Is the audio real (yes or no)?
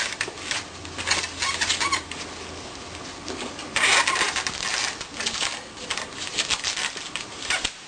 yes